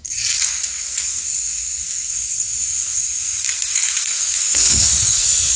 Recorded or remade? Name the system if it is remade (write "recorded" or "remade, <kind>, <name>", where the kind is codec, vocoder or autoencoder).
remade, codec, SNAC